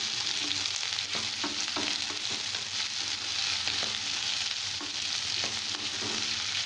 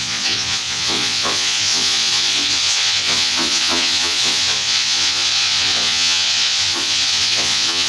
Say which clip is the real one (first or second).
first